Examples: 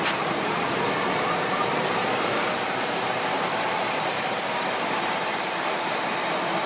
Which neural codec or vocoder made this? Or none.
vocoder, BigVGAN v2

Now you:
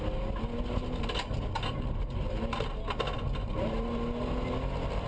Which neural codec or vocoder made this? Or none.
none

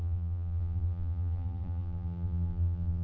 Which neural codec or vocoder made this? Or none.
vocoder, BigVGAN v2